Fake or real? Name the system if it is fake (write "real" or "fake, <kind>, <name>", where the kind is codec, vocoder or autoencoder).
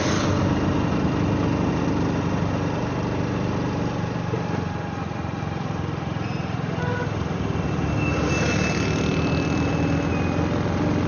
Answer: real